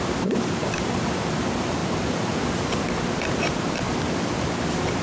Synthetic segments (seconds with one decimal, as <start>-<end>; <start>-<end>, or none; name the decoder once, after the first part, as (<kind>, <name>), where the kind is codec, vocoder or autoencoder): none